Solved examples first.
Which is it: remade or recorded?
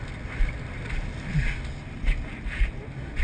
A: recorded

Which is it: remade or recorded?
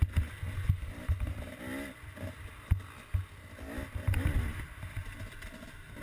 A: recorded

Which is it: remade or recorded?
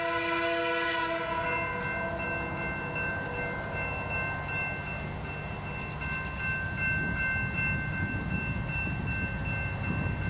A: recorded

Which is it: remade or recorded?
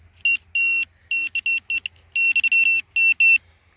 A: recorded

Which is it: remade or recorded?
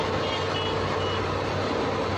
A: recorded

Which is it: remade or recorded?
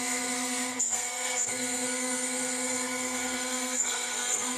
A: remade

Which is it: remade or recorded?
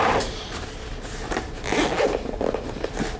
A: recorded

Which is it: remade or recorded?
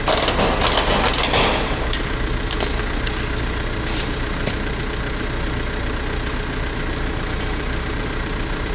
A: recorded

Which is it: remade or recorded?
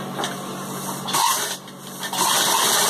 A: recorded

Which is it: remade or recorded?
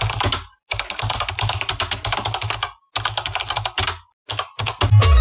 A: recorded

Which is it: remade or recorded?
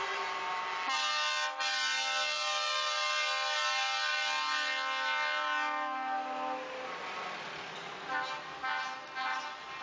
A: recorded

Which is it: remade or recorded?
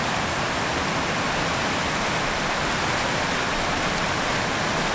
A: recorded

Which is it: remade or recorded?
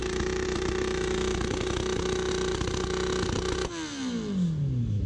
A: recorded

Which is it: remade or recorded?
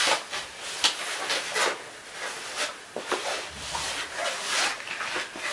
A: recorded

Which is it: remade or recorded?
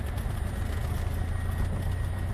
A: recorded